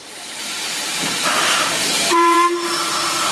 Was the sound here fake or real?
fake